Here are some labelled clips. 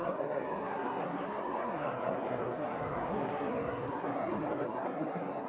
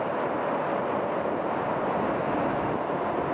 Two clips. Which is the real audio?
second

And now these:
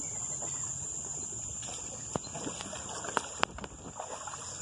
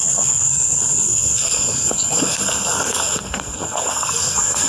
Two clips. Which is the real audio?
first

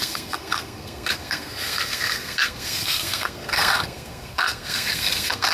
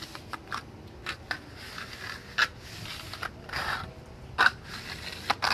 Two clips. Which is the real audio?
second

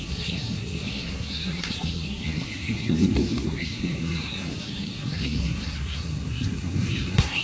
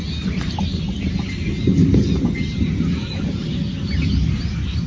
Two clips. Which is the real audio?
second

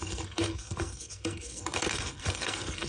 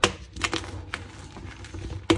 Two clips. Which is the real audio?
second